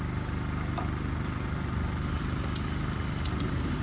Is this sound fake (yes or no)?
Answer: no